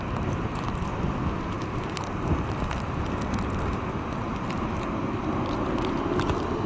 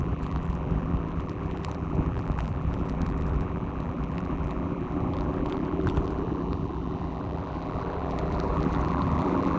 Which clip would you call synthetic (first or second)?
second